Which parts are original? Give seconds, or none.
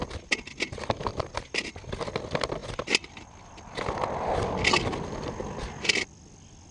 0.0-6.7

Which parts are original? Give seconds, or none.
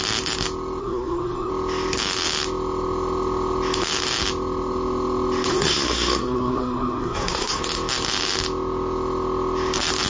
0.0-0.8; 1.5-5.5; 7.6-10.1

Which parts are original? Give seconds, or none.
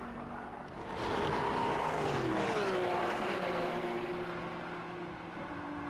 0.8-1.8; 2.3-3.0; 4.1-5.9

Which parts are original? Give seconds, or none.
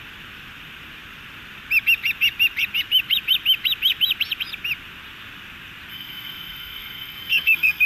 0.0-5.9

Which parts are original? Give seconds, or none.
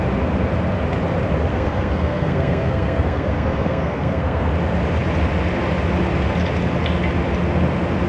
0.0-1.5; 4.5-8.1